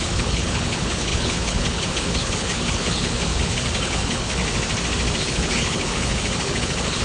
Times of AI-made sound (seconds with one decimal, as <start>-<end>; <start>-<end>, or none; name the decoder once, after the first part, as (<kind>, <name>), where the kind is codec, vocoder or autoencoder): 0.0-4.4 (codec, HILCodec); 5.2-7.0